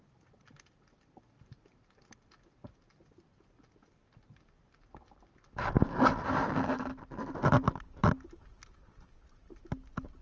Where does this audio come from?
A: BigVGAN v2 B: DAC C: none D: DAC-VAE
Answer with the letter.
C